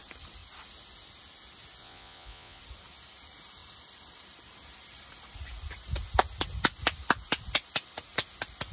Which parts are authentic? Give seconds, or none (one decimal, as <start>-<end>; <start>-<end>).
0.0-1.8; 2.6-8.7